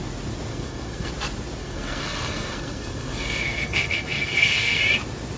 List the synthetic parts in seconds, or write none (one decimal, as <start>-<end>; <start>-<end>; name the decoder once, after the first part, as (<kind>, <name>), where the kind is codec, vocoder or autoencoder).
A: 0.5-1.1 (codec, SNAC); 1.6-4.8